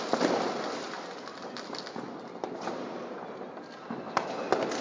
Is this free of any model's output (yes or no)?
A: yes